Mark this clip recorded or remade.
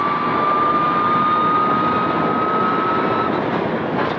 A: recorded